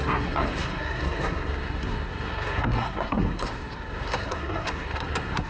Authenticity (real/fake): fake